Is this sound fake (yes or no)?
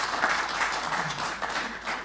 yes